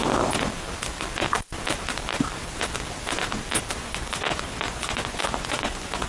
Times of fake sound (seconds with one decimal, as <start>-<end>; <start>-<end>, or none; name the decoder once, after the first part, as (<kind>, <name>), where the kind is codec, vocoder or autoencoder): 3.8-6.1 (vocoder, Vocos)